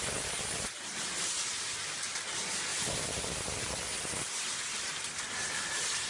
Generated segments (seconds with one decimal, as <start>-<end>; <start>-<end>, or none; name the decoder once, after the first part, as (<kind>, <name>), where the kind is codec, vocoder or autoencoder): none